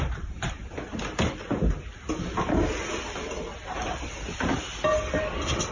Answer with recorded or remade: recorded